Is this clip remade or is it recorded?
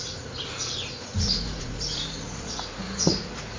remade